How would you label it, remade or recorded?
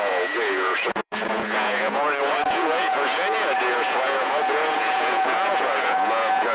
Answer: remade